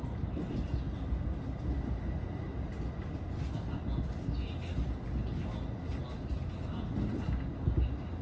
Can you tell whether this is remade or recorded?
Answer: recorded